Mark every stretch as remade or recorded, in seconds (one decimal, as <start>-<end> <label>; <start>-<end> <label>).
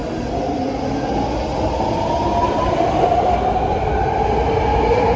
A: 0.0-5.2 recorded